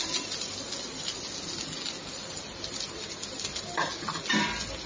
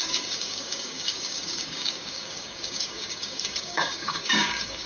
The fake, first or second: second